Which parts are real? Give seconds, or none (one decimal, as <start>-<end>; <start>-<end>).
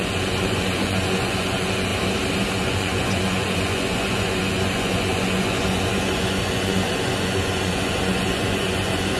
1.9-2.5